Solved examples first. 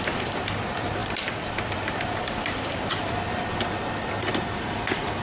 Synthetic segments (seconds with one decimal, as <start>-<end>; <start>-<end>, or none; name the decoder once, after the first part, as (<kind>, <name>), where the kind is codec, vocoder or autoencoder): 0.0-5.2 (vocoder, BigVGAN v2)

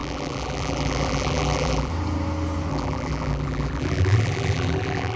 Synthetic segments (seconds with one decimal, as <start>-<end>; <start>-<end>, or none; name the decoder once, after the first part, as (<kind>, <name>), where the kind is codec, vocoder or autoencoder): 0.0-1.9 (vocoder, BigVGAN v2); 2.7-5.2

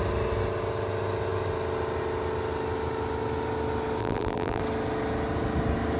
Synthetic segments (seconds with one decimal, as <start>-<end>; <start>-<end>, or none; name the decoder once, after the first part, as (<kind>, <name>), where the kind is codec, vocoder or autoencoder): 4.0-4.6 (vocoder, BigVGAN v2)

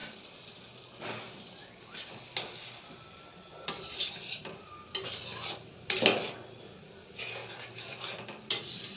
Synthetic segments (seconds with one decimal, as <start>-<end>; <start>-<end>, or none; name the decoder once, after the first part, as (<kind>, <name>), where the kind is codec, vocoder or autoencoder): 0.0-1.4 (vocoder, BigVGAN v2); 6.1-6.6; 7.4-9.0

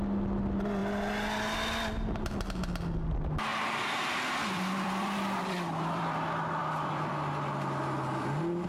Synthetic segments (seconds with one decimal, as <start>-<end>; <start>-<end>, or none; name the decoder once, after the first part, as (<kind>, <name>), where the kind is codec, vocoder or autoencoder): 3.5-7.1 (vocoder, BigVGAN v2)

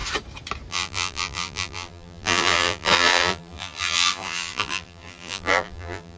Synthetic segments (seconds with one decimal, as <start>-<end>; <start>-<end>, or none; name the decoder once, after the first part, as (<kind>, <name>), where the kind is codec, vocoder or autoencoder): 0.7-6.2 (vocoder, BigVGAN v2)

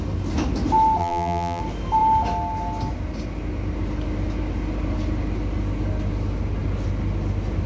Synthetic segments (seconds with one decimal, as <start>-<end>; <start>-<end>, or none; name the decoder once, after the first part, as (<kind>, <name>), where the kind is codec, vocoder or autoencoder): 1.0-1.6 (vocoder, BigVGAN v2)

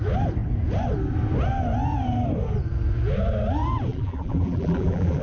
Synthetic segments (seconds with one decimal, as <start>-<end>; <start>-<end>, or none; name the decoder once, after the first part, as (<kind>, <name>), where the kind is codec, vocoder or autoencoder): 3.9-5.2 (vocoder, BigVGAN v2)